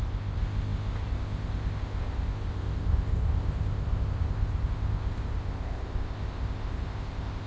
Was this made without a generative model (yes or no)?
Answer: no